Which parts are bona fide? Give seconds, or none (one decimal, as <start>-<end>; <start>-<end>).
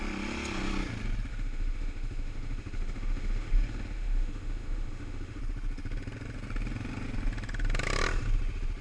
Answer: 0.0-1.3; 5.4-8.8